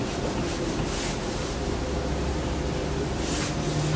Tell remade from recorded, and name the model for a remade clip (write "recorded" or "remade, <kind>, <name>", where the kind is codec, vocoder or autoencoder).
recorded